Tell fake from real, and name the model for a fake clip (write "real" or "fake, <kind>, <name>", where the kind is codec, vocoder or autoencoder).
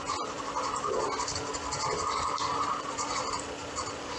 fake, vocoder, BigVGAN v2